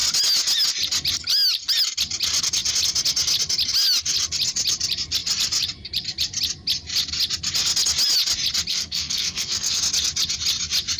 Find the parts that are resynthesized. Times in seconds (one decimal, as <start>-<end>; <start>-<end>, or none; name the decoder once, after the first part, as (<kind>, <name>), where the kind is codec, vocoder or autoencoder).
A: 8.7-9.8 (codec, SNAC)